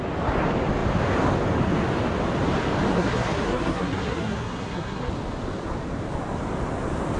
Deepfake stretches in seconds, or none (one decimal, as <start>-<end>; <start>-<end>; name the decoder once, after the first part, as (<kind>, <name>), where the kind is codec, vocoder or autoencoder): 2.9-5.1 (codec, SNAC)